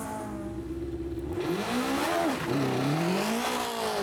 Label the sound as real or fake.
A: real